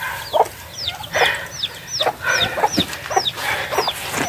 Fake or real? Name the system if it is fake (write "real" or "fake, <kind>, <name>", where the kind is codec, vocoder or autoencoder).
real